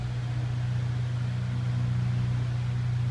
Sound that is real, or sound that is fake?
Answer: real